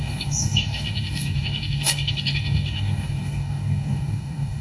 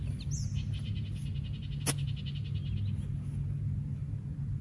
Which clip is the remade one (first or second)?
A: first